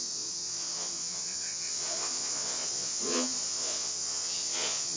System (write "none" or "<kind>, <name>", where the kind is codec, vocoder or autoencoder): vocoder, Vocos